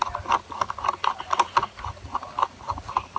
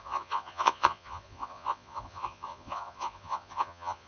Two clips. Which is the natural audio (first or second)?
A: first